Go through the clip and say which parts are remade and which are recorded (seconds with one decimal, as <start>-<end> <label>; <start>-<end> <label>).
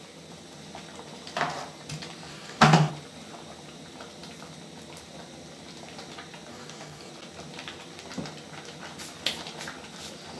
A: 0.0-2.3 recorded; 2.3-2.9 remade; 2.9-6.5 recorded; 6.5-7.1 remade; 7.1-10.4 recorded